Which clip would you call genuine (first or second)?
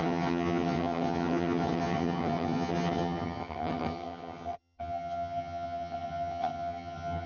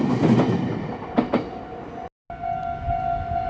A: second